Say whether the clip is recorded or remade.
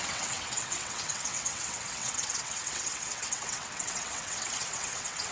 remade